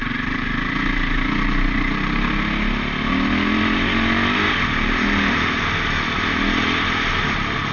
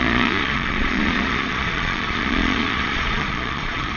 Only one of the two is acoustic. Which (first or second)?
first